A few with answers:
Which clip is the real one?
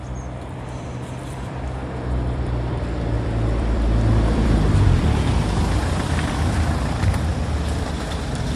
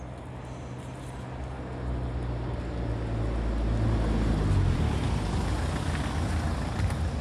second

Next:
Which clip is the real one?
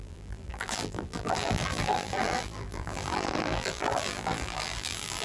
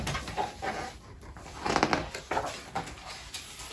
second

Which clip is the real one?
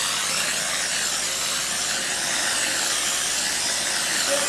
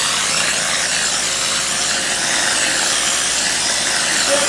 first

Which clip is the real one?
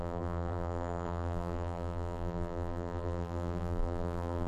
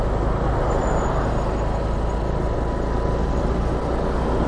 second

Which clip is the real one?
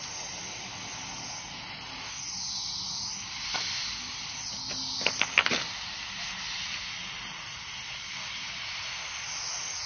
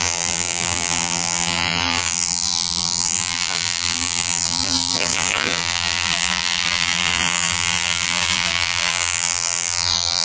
first